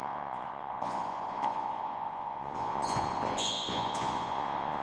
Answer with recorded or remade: remade